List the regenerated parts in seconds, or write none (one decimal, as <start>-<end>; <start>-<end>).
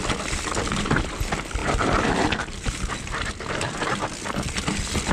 none